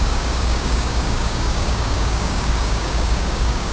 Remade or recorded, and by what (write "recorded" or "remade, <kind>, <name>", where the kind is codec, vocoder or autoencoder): remade, codec, DAC